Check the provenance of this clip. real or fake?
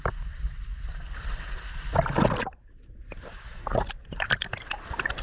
real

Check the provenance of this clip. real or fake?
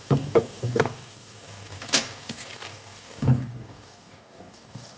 fake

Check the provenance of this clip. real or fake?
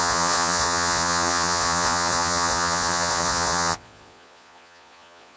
fake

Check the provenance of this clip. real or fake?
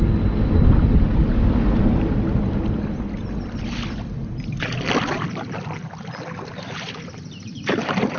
real